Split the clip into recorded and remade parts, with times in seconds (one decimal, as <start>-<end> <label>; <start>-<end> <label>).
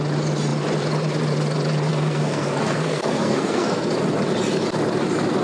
0.0-1.9 recorded; 1.9-3.9 remade; 3.9-5.4 recorded